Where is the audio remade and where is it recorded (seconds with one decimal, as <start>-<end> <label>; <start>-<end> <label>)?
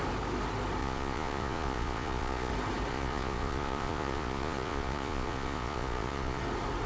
0.0-0.8 recorded; 0.8-2.5 remade; 2.5-2.9 recorded; 2.9-6.4 remade; 6.4-6.9 recorded